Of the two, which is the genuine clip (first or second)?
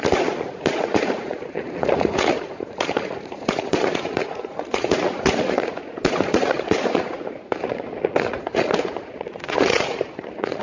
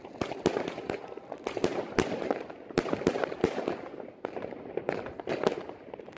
second